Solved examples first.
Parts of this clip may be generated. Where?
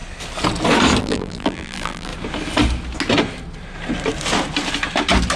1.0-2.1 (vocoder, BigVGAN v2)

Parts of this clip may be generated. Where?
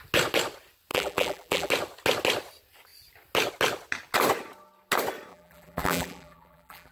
0.9-1.7 (vocoder, BigVGAN v2); 5.3-6.9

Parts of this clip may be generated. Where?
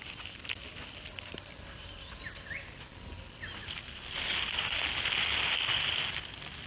none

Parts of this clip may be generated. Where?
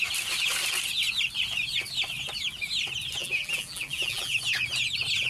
3.2-4.4 (vocoder, BigVGAN v2)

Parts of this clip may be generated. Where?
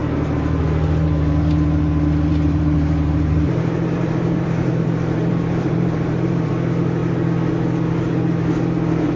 0.0-0.6 (vocoder, BigVGAN v2); 2.3-6.5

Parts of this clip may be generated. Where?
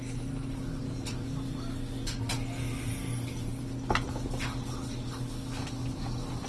none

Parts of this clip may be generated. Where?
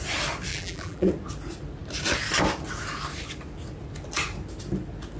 0.5-1.1 (vocoder, BigVGAN v2)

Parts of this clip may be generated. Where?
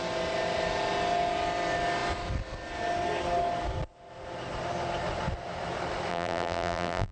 6.1-7.1 (vocoder, BigVGAN v2)